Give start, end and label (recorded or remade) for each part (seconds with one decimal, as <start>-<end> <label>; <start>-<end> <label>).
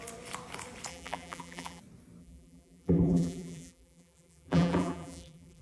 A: 0.0-0.9 recorded; 0.9-1.8 remade; 1.8-2.2 recorded; 2.2-5.6 remade